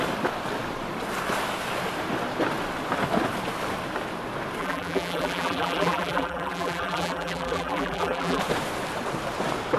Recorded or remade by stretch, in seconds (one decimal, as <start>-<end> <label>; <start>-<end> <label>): 0.0-4.6 recorded; 4.6-8.4 remade; 8.4-9.8 recorded